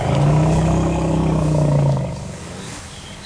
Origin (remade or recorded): remade